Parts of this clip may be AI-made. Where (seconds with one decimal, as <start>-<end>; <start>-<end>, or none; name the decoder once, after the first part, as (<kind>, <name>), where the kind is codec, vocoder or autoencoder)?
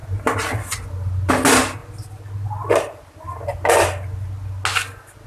none